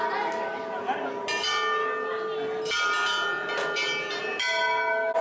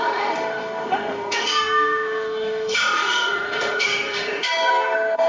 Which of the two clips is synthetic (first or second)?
second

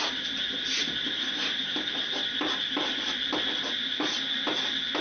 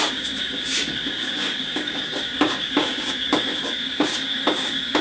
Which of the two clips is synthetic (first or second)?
second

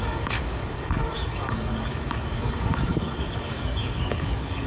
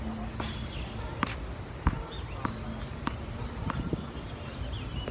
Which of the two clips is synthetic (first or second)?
first